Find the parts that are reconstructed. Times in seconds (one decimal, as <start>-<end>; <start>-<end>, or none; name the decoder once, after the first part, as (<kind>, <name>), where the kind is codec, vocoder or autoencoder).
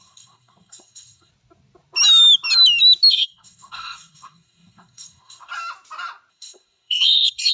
0.0-1.3 (codec, SNAC); 3.1-5.5; 6.3-7.5